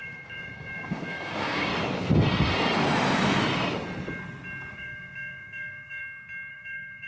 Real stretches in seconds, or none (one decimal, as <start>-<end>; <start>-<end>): 1.7-4.7; 6.0-6.5